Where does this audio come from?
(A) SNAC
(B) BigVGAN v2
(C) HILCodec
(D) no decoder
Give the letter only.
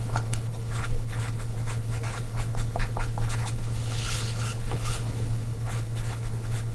C